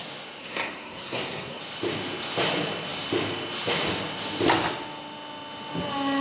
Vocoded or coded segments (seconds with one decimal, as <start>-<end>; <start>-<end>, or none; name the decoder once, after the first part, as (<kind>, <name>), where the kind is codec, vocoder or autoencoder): 0.4-1.6 (codec, SNAC)